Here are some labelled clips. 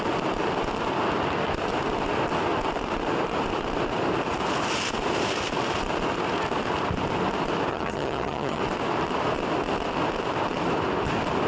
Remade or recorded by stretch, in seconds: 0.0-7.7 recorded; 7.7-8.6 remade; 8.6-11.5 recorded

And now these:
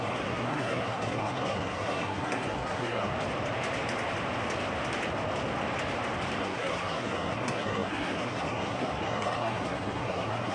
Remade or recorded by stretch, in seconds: 0.0-3.1 remade; 3.1-6.4 recorded; 6.4-10.5 remade

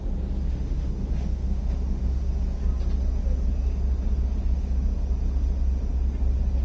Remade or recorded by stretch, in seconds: 0.0-0.5 recorded; 0.5-2.2 remade; 2.2-6.6 recorded

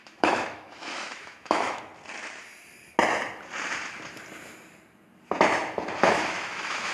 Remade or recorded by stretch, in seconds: 0.0-1.9 remade; 1.9-6.0 recorded; 6.0-6.9 remade

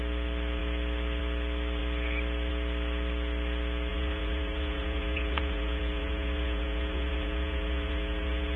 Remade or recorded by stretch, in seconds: 0.0-3.9 recorded; 3.9-8.6 remade

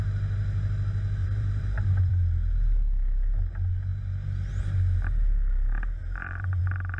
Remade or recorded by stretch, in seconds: 0.0-1.2 recorded; 1.2-2.1 remade; 2.1-6.0 recorded; 6.0-6.6 remade; 6.6-7.0 recorded